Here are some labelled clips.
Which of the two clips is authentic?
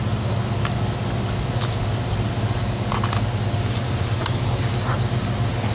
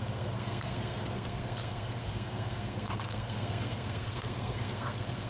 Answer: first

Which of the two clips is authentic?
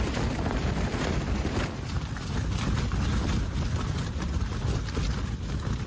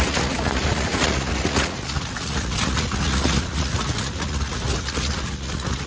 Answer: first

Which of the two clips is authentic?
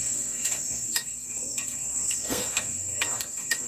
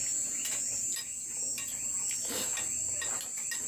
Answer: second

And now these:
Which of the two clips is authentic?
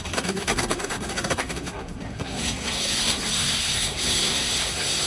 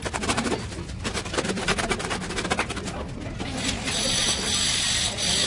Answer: second